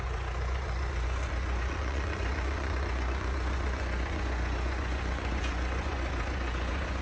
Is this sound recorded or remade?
remade